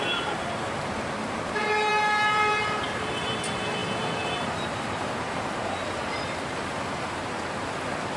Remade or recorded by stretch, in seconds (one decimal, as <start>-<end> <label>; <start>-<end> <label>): 0.0-8.2 remade